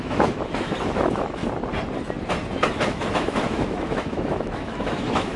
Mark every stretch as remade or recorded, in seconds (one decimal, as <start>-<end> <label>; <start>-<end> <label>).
0.0-1.4 remade; 1.4-2.7 recorded; 2.7-5.4 remade